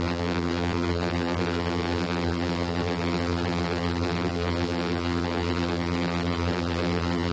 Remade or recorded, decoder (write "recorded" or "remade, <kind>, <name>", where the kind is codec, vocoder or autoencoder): remade, vocoder, BigVGAN v2